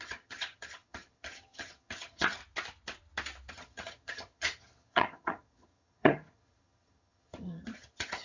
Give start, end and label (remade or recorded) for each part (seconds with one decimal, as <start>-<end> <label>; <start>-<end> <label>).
0.0-2.4 remade; 2.4-3.5 recorded; 3.5-8.2 remade

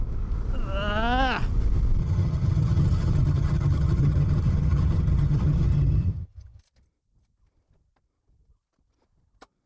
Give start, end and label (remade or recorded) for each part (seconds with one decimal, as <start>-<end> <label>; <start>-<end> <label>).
0.0-2.0 recorded; 2.0-6.6 remade; 6.6-9.7 recorded

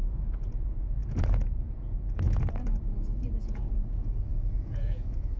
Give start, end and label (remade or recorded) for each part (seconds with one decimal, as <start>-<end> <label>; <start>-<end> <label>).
0.0-5.4 remade

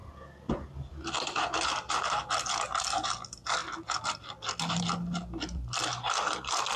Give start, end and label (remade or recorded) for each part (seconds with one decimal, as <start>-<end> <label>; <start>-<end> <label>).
0.0-6.8 recorded

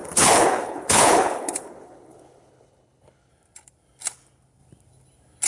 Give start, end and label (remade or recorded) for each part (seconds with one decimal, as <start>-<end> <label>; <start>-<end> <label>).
0.0-3.3 remade; 3.3-5.5 recorded

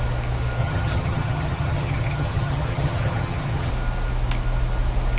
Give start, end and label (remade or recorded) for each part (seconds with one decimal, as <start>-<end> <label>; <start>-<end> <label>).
0.0-0.6 recorded; 0.6-3.7 remade; 3.7-5.2 recorded

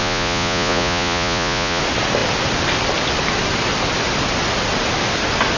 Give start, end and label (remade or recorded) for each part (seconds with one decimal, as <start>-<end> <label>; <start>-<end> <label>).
0.0-1.8 remade; 1.8-5.6 recorded

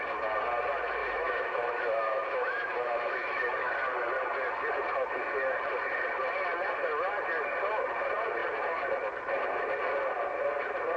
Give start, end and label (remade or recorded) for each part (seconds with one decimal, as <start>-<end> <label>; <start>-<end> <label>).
0.0-1.0 recorded; 1.0-3.7 remade; 3.7-11.0 recorded